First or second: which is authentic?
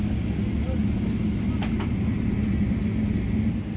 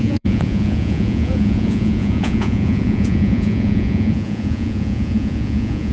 first